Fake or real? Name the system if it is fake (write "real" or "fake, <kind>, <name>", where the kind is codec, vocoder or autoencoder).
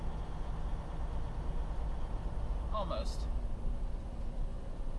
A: real